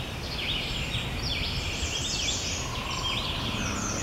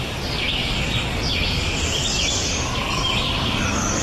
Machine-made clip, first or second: second